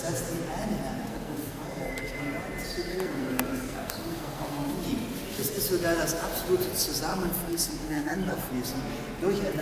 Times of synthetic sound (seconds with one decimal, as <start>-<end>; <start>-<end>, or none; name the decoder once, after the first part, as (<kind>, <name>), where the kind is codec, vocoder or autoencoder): 1.0-2.2 (codec, SNAC); 2.9-4.7; 7.1-8.5